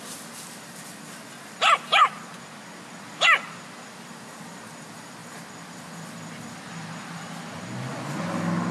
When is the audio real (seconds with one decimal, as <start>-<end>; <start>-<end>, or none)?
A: 0.0-8.7